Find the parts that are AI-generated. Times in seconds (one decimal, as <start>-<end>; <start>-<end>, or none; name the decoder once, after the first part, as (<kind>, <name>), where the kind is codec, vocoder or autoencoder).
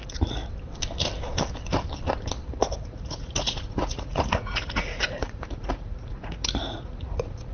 0.0-0.4 (vocoder, Vocos); 2.8-7.5